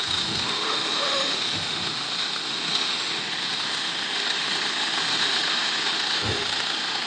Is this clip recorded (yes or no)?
no